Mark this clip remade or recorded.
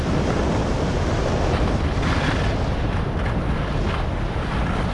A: recorded